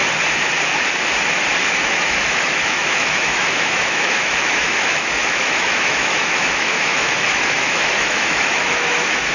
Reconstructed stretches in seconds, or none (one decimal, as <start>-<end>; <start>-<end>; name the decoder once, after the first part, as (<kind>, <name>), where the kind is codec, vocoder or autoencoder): 1.7-9.3 (autoencoder, DAC-VAE)

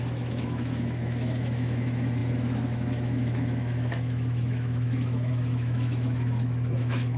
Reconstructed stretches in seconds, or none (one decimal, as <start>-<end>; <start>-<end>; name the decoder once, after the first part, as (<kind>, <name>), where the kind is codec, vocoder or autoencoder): 0.0-7.2 (autoencoder, DAC-VAE)

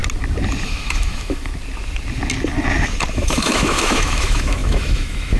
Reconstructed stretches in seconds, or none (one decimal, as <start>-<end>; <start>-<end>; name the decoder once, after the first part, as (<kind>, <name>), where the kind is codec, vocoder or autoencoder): 0.6-1.5 (autoencoder, DAC-VAE); 3.1-5.4

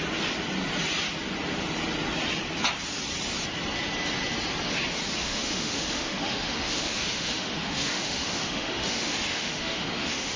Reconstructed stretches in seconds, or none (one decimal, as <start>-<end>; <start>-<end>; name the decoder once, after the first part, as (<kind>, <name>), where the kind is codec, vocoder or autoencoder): 5.2-10.4 (autoencoder, DAC-VAE)

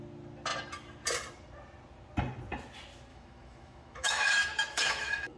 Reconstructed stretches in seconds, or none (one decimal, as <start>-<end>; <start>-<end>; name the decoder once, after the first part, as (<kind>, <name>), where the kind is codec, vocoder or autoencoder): 3.1-5.4 (autoencoder, DAC-VAE)